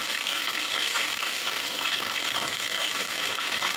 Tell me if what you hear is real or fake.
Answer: fake